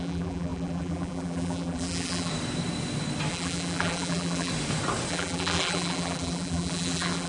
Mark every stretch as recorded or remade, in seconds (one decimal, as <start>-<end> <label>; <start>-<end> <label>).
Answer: 0.0-2.3 remade; 2.3-3.3 recorded; 3.3-4.5 remade; 4.5-5.1 recorded; 5.1-7.3 remade